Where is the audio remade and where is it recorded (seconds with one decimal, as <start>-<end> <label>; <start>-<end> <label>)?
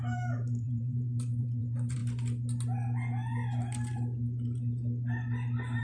0.0-2.0 remade; 2.0-5.8 recorded